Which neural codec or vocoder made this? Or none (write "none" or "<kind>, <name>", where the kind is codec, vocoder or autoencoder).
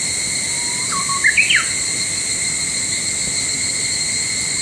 none